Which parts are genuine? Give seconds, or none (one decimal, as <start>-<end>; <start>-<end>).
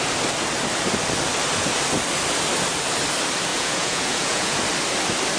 0.0-3.5; 4.6-5.4